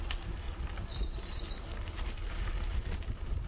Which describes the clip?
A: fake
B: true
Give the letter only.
B